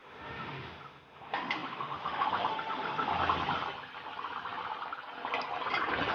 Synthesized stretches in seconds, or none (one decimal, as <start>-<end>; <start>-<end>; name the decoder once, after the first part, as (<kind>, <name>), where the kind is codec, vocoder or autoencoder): 0.0-3.1 (autoencoder, DAC-VAE)